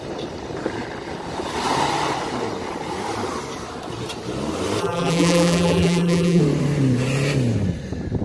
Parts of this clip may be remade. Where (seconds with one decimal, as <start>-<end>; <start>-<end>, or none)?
4.8-6.4